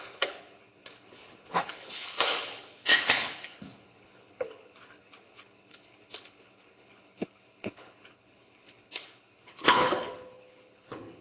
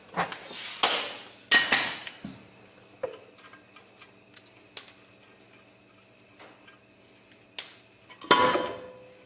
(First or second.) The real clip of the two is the second